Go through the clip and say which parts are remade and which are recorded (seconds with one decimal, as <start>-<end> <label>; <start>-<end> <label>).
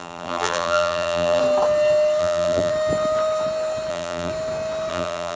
0.0-1.4 remade; 1.4-2.2 recorded; 2.2-2.7 remade; 2.7-3.9 recorded; 3.9-4.3 remade; 4.3-4.9 recorded; 4.9-5.4 remade